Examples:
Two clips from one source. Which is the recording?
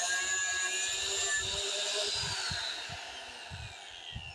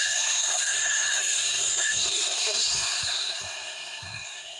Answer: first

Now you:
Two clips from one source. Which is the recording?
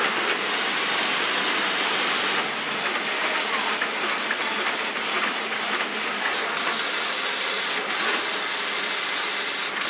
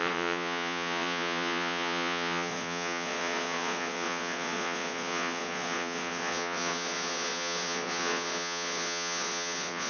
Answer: first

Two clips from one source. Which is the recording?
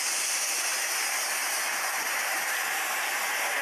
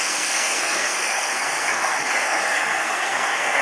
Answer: first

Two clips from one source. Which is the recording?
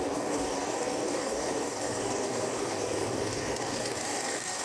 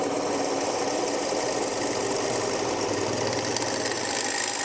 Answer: second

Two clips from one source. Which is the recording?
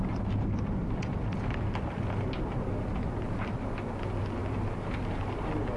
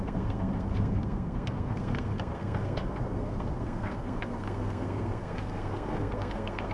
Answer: first